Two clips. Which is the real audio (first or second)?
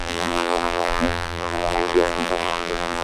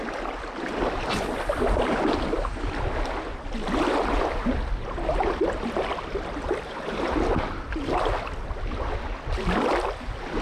second